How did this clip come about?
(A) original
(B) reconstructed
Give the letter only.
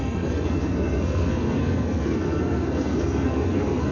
B